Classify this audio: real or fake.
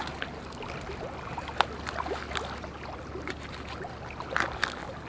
real